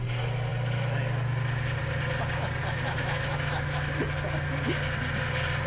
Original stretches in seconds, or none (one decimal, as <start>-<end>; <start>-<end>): 0.0-2.6; 4.0-5.7